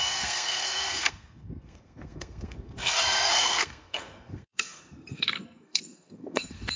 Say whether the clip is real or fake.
fake